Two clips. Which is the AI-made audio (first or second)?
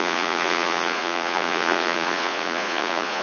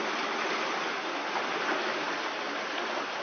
first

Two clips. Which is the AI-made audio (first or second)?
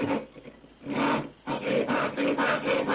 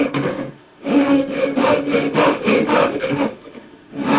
second